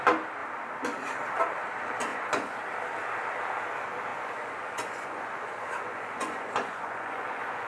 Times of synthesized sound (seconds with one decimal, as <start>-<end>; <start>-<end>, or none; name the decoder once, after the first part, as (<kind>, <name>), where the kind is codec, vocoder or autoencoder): 2.1-2.6 (vocoder, Vocos); 4.1-7.7